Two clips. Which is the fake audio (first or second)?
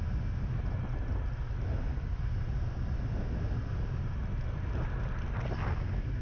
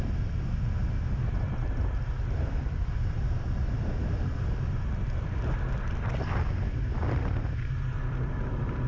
second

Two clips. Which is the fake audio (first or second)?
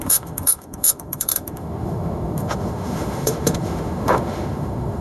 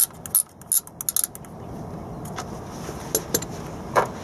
first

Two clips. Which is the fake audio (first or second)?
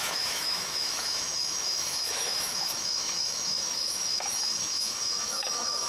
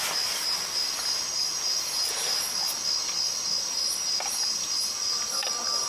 first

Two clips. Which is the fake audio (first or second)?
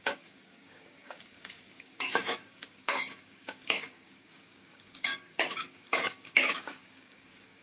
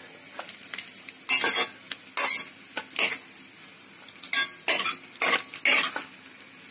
first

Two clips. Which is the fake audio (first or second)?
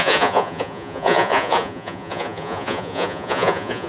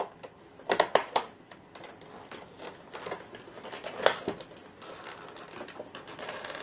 first